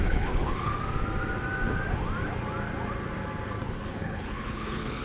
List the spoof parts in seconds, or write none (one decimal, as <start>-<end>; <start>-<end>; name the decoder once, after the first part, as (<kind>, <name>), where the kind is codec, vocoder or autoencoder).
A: 0.0-0.7 (codec, HILCodec); 3.7-5.0